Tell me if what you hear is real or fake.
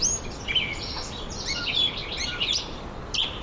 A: real